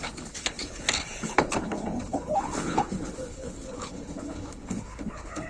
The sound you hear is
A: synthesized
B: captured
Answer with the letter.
A